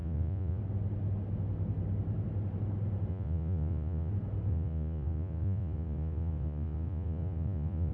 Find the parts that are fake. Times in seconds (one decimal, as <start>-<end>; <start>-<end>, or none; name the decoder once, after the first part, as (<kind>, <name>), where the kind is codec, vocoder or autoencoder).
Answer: 0.0-0.6 (vocoder, Vocos); 3.1-4.1; 4.5-7.9